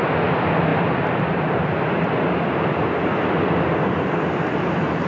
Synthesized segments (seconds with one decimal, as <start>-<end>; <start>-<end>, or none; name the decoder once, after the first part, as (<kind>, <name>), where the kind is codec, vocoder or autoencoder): none